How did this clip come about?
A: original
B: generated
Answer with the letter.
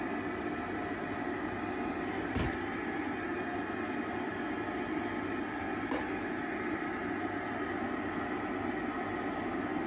A